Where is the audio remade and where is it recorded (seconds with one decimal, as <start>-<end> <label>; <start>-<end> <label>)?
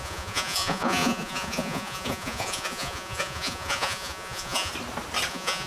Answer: 0.0-4.7 remade; 4.7-5.3 recorded; 5.3-5.7 remade